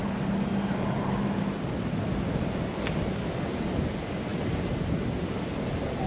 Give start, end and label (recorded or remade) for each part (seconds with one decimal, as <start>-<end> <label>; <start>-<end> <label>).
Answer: 0.0-6.1 recorded